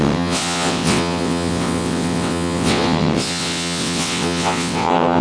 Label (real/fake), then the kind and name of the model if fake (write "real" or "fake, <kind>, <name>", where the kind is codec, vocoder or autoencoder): fake, vocoder, WaveNeXt